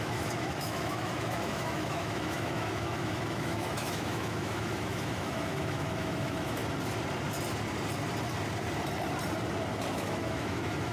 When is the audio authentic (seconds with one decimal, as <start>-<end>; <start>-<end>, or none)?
6.6-9.9